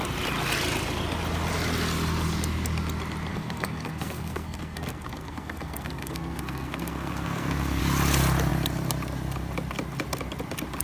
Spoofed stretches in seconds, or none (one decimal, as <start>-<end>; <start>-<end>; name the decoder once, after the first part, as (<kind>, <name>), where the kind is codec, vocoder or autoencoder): 3.3-7.8 (codec, SNAC)